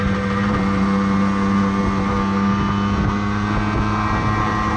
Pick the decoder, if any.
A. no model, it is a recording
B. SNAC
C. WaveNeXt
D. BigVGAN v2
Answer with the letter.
A